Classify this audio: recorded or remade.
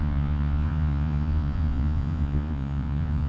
remade